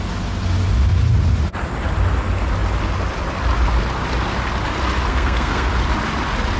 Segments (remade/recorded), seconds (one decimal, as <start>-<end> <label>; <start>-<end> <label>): 0.0-5.1 recorded; 5.1-5.7 remade; 5.7-6.6 recorded